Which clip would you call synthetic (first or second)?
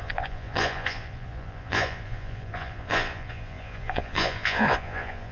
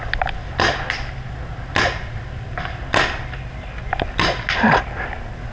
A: first